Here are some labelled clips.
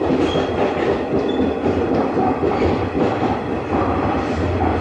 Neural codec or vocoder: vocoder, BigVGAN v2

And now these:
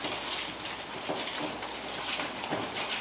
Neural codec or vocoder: none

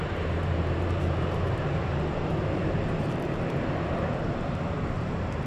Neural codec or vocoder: vocoder, BigVGAN v2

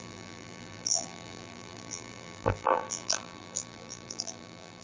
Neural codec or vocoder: vocoder, BigVGAN v2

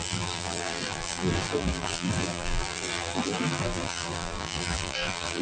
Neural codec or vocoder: vocoder, BigVGAN v2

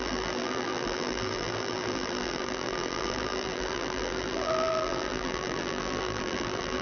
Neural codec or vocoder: vocoder, BigVGAN v2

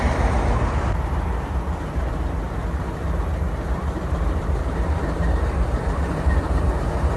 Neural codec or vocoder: vocoder, BigVGAN v2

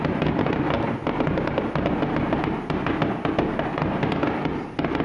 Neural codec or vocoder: none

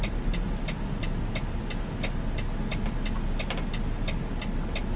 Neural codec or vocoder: none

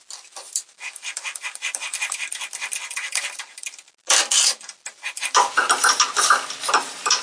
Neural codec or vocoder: none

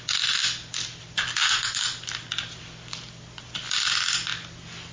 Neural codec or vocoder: none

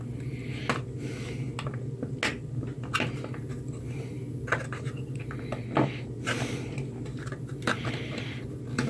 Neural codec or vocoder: none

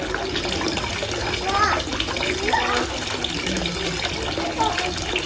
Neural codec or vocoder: none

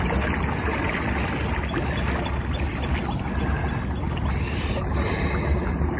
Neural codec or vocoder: none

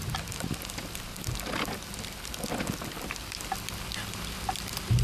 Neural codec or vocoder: none